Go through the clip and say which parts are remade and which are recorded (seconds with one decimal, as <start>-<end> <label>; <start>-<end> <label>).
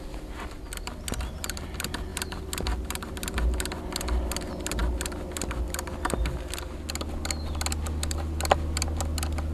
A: 0.0-9.5 recorded